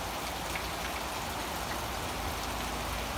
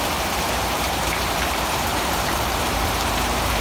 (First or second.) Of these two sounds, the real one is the first